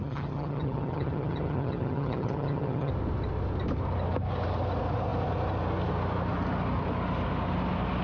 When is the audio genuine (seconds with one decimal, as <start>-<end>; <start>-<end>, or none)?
2.9-8.0